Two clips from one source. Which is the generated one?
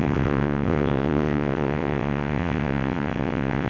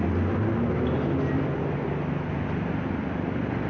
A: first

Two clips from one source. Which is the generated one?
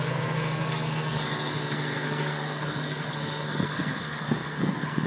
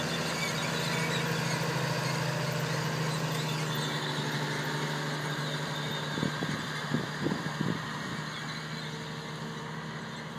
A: first